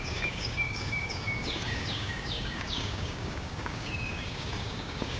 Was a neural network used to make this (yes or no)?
yes